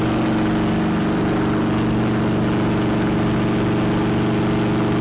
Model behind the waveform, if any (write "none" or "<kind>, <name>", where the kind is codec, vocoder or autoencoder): none